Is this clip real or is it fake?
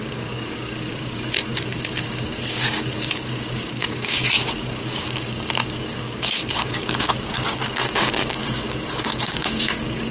fake